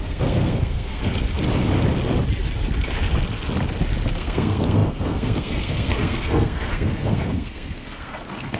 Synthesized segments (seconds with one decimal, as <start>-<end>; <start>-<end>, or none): 0.0-1.0; 4.1-8.6